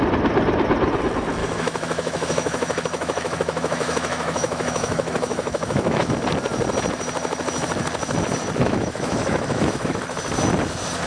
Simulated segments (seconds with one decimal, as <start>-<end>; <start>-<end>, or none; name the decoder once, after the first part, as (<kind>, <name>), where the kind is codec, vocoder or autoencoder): 1.4-6.1 (autoencoder, DAC-VAE); 8.6-10.0

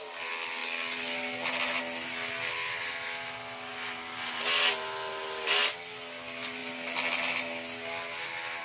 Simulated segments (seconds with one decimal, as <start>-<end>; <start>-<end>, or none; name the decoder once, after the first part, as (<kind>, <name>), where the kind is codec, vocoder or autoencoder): none

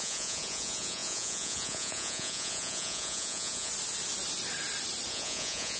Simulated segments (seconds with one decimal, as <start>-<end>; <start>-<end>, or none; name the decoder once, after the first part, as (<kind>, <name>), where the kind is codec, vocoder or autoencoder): 0.0-3.7 (vocoder, Vocos); 5.1-5.8

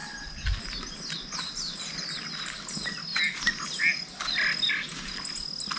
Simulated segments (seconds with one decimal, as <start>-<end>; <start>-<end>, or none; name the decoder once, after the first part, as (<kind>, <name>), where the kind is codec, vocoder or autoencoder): none

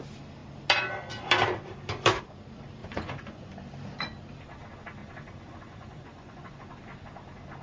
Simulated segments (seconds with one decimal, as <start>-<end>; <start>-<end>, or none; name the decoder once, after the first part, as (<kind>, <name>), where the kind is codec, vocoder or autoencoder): 2.8-3.5 (vocoder, Vocos); 5.0-6.7

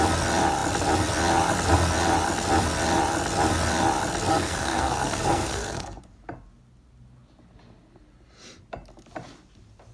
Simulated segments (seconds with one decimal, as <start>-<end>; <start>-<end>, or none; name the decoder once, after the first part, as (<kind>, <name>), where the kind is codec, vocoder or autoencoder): 4.3-6.0 (codec, SNAC)

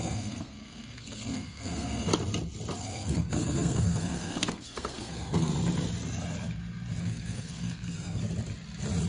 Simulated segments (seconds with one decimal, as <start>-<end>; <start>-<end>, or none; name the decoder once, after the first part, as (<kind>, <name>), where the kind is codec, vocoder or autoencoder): 0.0-2.1 (codec, SNAC); 2.8-5.5; 7.0-8.2